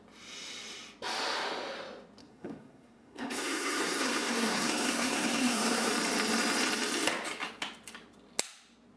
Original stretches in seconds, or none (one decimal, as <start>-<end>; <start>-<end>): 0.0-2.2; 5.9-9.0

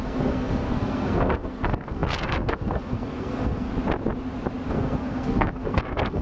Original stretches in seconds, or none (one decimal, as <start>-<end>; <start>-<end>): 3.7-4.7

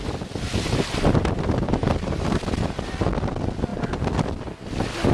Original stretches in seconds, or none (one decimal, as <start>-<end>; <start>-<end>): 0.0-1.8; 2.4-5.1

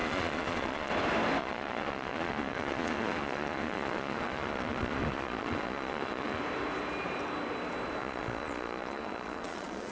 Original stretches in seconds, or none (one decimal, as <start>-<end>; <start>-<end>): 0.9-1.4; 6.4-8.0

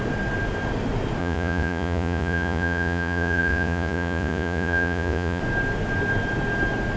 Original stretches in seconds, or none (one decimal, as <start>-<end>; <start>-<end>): 0.0-1.2; 5.4-7.0

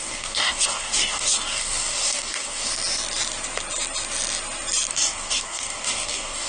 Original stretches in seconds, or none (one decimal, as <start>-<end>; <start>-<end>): 2.7-4.9